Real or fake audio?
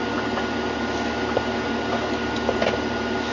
real